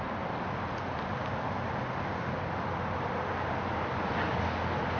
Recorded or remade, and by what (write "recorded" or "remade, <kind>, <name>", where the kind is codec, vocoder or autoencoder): recorded